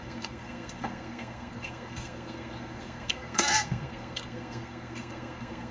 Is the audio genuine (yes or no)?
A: no